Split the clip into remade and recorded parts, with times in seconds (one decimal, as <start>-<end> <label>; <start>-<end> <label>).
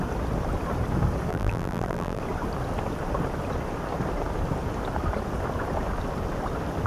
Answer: 0.0-1.3 recorded; 1.3-2.2 remade; 2.2-6.9 recorded